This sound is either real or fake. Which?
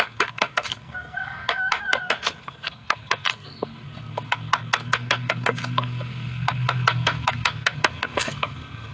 fake